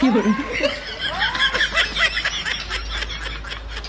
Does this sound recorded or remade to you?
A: recorded